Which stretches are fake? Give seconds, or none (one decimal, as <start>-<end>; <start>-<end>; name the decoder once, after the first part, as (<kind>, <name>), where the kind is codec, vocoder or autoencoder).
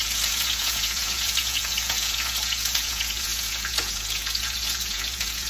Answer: 0.0-5.5 (vocoder, Vocos)